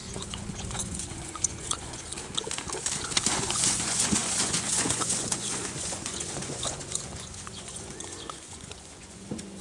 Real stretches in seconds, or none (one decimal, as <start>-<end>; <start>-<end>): 2.1-3.0